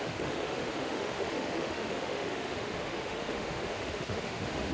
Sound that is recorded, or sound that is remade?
remade